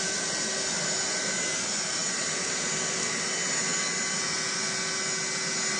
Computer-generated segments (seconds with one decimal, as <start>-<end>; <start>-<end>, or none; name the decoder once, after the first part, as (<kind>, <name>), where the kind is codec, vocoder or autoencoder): none

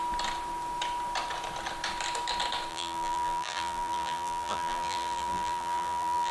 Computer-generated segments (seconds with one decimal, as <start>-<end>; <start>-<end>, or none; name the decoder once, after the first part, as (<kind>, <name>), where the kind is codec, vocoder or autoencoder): 2.7-6.3 (vocoder, BigVGAN v2)

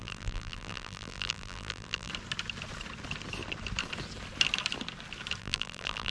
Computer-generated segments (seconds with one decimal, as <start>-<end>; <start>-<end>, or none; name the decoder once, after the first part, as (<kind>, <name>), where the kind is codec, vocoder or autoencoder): 0.0-2.1 (vocoder, BigVGAN v2); 5.4-6.1

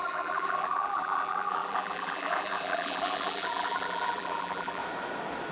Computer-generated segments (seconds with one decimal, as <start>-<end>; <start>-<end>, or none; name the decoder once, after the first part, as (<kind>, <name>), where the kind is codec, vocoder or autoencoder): 0.0-4.8 (vocoder, BigVGAN v2)

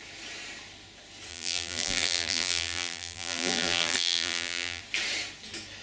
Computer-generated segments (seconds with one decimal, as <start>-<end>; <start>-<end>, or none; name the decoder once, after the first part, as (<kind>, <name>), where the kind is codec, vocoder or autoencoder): 1.3-4.8 (vocoder, BigVGAN v2)